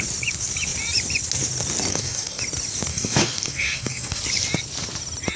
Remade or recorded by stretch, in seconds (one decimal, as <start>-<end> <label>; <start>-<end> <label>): 0.0-1.9 recorded; 1.9-2.4 remade; 2.4-2.9 recorded; 2.9-4.2 remade; 4.2-5.4 recorded